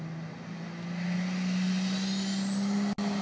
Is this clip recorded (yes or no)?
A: yes